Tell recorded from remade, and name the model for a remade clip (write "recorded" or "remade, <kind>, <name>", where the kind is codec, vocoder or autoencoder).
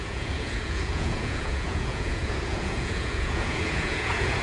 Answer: remade, vocoder, Vocos